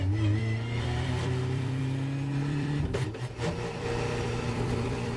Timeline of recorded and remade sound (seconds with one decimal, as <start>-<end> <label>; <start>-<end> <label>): 0.0-0.4 recorded; 0.4-1.8 remade; 1.8-2.3 recorded; 2.3-5.2 remade